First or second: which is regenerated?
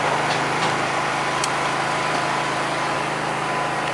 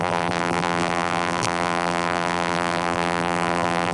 second